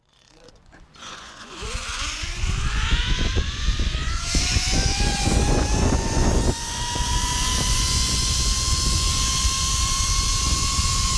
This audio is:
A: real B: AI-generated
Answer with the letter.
B